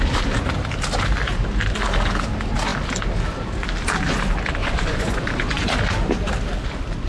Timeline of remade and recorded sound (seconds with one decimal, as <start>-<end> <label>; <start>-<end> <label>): 0.0-4.6 recorded; 4.6-5.7 remade; 5.7-7.1 recorded